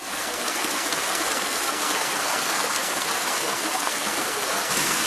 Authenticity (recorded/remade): remade